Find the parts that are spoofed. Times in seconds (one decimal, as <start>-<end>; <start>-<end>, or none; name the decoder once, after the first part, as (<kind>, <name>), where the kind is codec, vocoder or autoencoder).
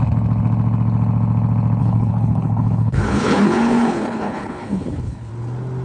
1.8-5.3 (codec, HILCodec)